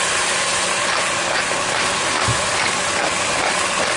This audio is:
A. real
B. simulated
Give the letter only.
A